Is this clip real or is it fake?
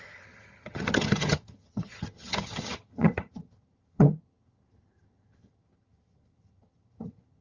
fake